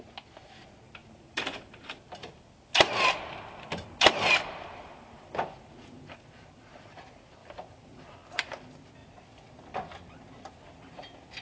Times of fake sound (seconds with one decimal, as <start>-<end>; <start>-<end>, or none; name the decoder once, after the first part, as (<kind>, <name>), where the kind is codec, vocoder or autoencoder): 1.0-6.3 (vocoder, BigVGAN v2); 7.4-8.0

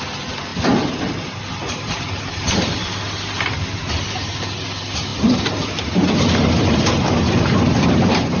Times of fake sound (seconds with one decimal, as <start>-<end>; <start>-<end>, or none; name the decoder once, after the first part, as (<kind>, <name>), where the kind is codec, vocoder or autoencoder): 0.5-4.0 (vocoder, BigVGAN v2); 5.1-6.8

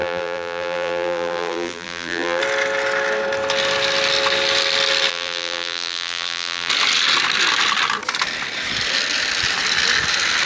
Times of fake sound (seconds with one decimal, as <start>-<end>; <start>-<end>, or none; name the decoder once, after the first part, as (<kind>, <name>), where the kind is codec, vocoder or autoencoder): 0.0-2.4 (vocoder, BigVGAN v2); 5.1-6.7